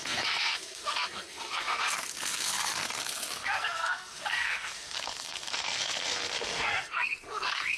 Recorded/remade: remade